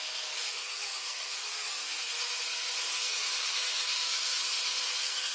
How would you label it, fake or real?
fake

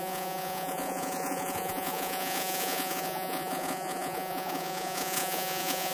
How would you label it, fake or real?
fake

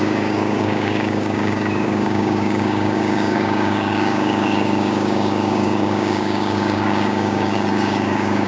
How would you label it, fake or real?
fake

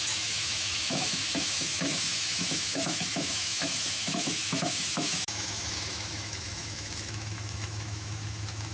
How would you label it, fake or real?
fake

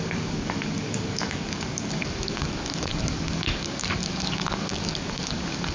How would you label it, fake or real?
fake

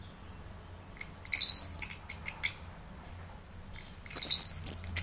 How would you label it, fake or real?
real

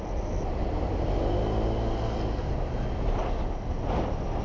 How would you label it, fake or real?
real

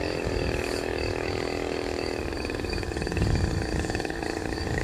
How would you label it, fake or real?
fake